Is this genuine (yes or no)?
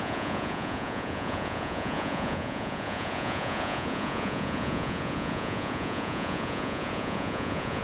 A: no